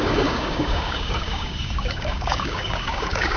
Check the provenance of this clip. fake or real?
fake